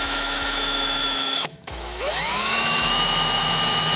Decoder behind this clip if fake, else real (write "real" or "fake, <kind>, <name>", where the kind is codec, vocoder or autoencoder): fake, autoencoder, DAC-VAE